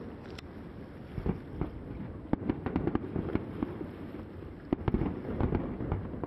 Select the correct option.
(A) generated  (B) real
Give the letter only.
B